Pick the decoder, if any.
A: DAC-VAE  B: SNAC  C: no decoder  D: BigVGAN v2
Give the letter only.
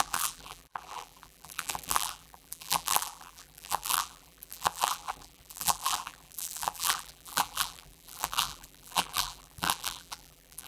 D